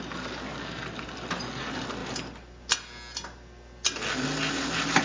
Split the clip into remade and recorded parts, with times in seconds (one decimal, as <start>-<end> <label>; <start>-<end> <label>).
0.0-5.0 recorded